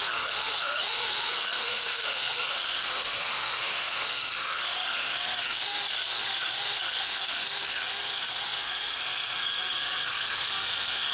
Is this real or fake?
fake